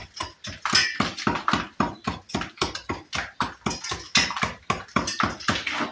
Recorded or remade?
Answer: recorded